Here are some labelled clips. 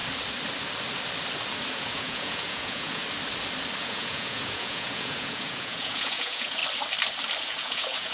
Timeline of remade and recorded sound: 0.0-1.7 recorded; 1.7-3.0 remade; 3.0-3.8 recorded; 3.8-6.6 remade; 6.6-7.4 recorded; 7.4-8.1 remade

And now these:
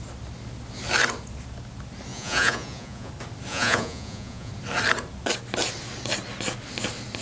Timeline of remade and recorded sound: 0.0-2.1 recorded; 2.1-3.1 remade; 3.1-3.5 recorded; 3.5-4.5 remade; 4.5-7.2 recorded

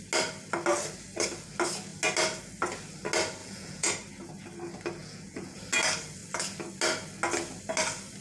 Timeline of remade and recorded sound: 0.0-3.4 recorded; 3.4-3.9 remade; 3.9-5.0 recorded; 5.0-5.6 remade; 5.6-8.2 recorded

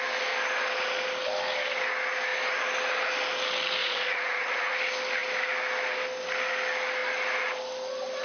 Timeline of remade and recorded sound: 0.0-3.8 recorded; 3.8-4.7 remade; 4.7-8.2 recorded

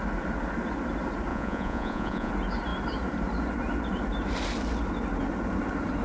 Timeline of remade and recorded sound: 0.0-1.3 recorded; 1.3-2.3 remade; 2.3-6.0 recorded